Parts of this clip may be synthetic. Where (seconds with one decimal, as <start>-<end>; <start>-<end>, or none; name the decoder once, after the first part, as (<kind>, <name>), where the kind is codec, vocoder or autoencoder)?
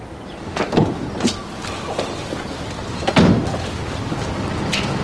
none